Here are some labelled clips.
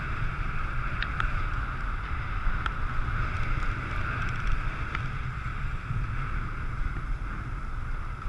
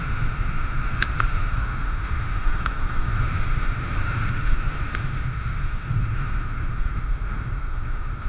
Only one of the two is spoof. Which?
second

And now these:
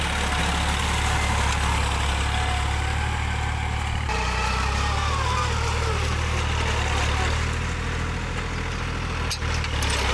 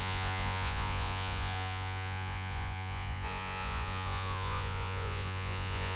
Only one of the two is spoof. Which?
second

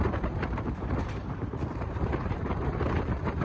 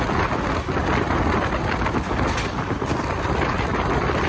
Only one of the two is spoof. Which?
first